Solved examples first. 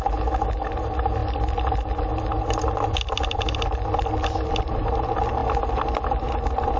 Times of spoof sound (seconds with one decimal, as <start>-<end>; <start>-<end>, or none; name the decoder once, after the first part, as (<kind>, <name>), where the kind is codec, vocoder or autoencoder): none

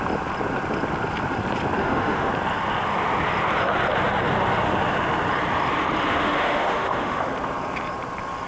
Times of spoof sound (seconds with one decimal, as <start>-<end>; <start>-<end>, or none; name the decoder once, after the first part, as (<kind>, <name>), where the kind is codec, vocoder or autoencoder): 1.8-2.3 (autoencoder, DAC-VAE); 6.1-7.2

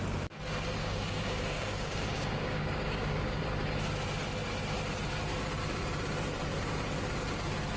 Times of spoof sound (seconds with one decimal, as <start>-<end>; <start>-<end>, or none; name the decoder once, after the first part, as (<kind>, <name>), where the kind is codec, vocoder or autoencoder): 0.8-3.4 (codec, DAC)